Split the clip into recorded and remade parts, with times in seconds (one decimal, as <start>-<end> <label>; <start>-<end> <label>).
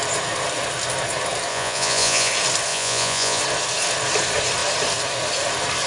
0.0-1.5 recorded; 1.5-2.3 remade; 2.3-2.7 recorded; 2.7-3.4 remade; 3.4-5.9 recorded